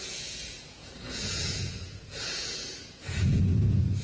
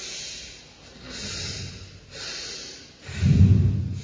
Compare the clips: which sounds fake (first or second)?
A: first